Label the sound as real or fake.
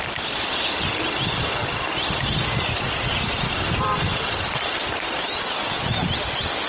fake